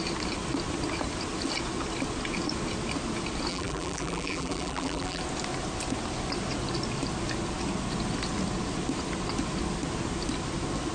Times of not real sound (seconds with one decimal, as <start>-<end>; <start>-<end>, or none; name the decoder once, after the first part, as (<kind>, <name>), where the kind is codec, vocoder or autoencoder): 3.5-5.2 (vocoder, BigVGAN v2)